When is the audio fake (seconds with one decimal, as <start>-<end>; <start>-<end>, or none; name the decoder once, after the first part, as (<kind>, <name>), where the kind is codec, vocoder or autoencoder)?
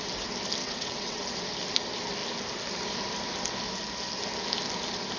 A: 0.6-1.2 (vocoder, WaveNeXt)